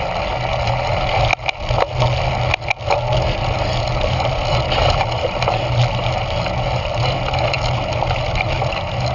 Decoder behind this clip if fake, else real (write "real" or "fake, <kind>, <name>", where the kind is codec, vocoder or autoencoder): real